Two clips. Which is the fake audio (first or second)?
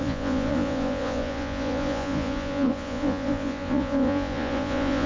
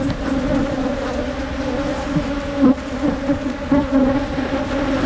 first